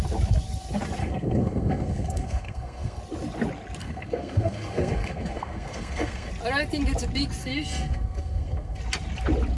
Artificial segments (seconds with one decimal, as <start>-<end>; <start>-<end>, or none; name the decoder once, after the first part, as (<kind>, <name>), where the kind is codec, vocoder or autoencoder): 1.0-3.0 (codec, SNAC); 3.8-6.3; 7.4-8.8